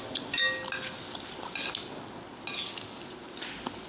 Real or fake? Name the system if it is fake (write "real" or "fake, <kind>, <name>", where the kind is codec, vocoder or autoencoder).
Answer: real